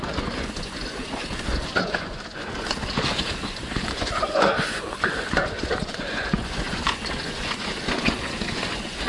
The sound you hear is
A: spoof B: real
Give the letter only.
A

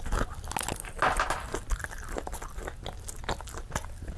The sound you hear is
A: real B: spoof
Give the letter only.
A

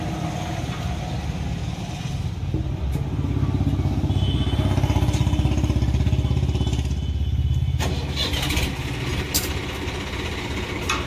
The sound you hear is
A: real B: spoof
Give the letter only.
A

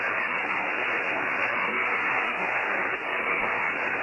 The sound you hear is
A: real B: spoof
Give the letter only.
B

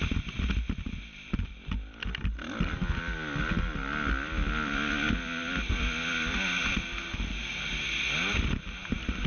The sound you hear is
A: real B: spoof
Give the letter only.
A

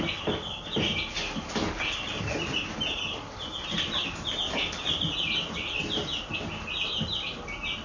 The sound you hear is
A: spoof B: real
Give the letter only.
B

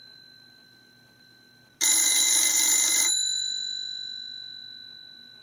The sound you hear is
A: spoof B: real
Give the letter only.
B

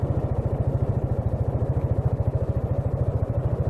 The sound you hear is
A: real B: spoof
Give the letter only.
B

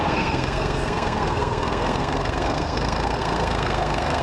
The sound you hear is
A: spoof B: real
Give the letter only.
A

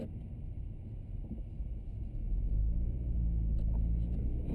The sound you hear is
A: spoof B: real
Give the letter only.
B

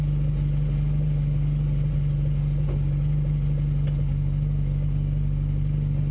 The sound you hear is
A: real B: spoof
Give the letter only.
A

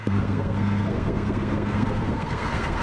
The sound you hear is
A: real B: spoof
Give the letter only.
B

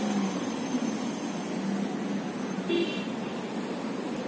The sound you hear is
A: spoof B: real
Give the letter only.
B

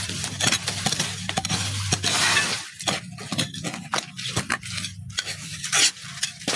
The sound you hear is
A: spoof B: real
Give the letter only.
B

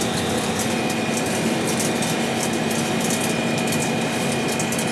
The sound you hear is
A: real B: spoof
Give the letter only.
A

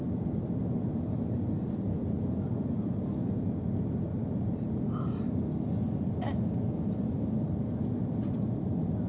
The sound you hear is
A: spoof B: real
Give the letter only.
B